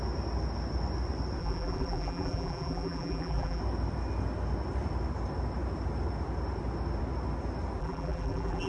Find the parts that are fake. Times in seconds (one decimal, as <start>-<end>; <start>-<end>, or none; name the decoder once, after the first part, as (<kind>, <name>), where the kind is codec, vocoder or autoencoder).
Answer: 1.4-3.6 (vocoder, BigVGAN v2); 7.8-8.7